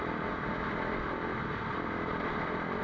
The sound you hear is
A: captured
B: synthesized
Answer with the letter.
A